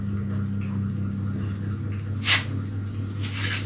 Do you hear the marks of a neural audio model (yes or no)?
no